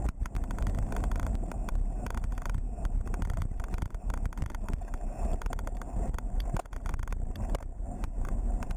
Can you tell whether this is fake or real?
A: fake